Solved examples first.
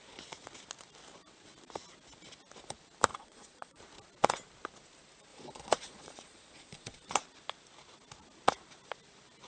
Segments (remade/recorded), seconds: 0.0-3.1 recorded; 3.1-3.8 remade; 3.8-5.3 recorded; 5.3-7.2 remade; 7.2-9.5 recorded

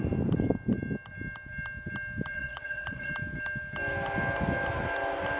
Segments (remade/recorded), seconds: 0.0-2.3 recorded; 2.3-3.1 remade; 3.1-5.4 recorded

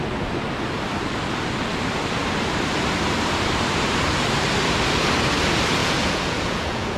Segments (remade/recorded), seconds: 0.0-5.8 recorded; 5.8-7.0 remade

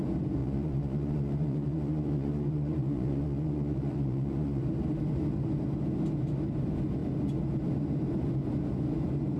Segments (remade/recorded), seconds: 0.0-0.4 recorded; 0.4-4.6 remade; 4.6-9.4 recorded